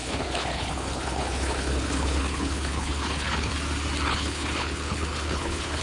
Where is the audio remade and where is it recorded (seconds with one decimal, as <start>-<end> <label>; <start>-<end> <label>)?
0.0-3.5 remade; 3.5-4.1 recorded; 4.1-5.8 remade